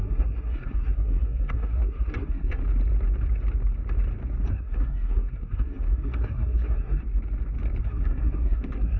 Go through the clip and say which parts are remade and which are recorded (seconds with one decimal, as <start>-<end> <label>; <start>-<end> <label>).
0.0-2.6 remade; 2.6-4.5 recorded; 4.5-7.0 remade; 7.0-7.8 recorded; 7.8-9.0 remade